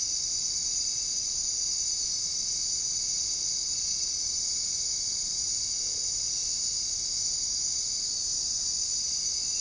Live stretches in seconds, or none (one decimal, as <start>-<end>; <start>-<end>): 0.0-9.6